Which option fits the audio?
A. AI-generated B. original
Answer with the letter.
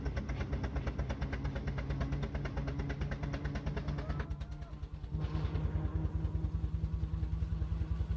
B